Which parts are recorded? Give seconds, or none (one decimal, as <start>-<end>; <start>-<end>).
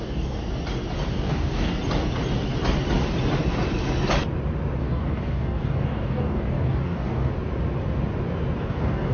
0.4-1.1; 1.7-4.8; 7.3-8.6